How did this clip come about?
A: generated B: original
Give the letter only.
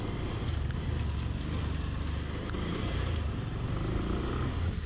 B